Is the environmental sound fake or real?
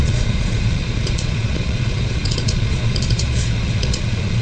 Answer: fake